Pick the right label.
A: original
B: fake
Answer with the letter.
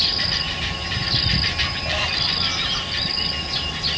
A